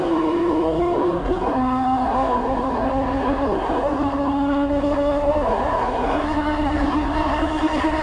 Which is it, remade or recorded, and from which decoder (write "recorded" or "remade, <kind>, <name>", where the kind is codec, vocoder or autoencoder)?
remade, codec, SNAC